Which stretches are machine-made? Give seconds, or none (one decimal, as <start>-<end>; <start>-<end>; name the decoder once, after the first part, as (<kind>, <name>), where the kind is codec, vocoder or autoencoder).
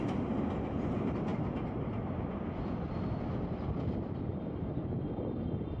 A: none